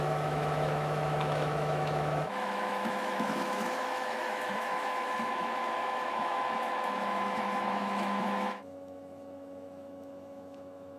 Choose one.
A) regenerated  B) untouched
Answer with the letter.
A